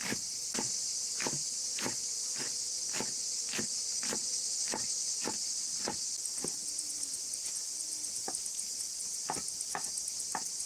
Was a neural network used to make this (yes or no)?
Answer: no